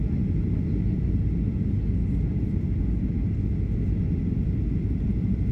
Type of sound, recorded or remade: recorded